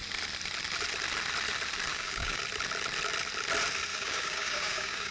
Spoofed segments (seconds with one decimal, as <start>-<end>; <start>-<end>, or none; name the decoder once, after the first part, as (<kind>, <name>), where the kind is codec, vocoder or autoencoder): 1.9-2.4 (codec, DAC); 3.9-5.1